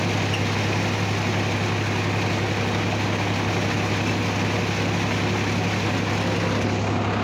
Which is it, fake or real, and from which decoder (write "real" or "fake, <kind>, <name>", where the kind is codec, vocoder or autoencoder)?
real